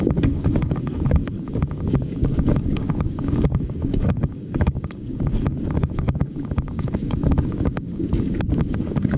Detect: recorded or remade remade